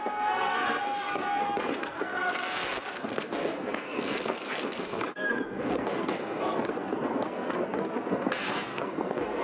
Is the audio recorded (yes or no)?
no